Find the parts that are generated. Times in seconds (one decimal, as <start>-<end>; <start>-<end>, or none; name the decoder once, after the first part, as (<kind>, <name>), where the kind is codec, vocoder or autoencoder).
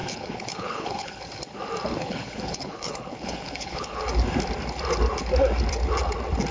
0.0-1.2 (codec, HILCodec); 1.9-4.0